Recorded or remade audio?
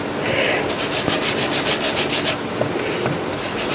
recorded